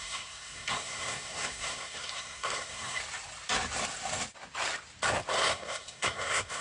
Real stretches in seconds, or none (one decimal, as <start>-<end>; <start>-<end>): 3.0-5.3